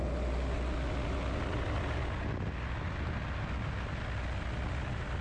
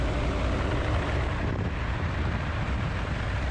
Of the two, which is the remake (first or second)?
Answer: second